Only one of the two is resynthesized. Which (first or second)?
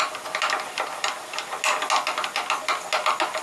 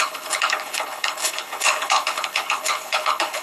second